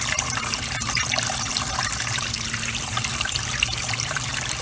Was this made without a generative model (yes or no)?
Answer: no